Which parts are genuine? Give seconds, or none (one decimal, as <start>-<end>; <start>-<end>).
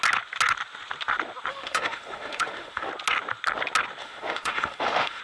0.0-1.5; 2.9-4.0